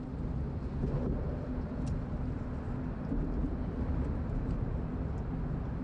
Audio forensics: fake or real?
real